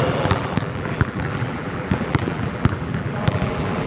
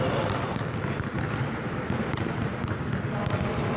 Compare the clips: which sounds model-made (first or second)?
first